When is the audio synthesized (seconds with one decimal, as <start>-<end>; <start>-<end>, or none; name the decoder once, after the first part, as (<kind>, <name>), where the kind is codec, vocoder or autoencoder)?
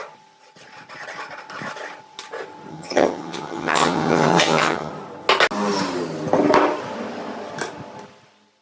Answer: 2.7-4.9 (vocoder, HiFi-GAN)